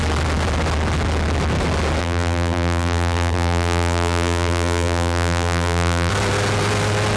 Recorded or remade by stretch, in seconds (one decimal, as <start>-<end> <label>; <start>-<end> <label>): 0.0-2.0 recorded; 2.0-6.1 remade; 6.1-7.2 recorded